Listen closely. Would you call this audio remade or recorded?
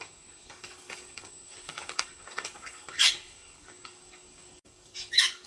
remade